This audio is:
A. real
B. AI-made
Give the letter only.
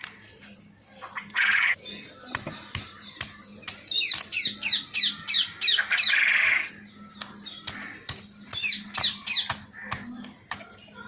A